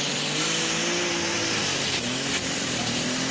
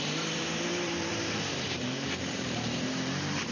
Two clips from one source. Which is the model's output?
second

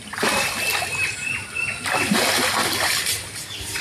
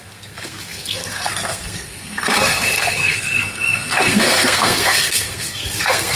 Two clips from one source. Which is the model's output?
second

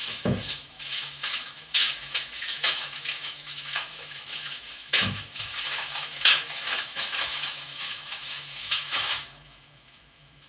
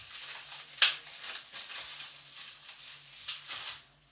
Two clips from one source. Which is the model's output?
first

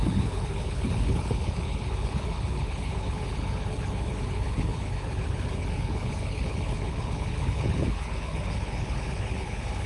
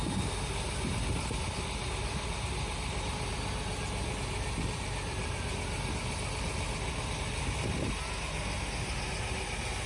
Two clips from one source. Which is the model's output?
first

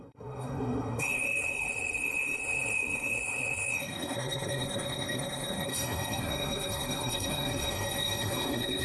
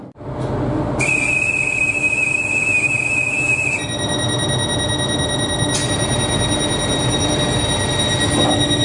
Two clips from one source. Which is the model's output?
first